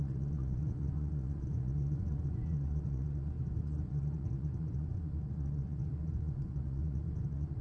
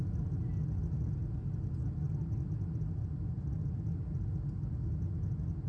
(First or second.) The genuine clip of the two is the second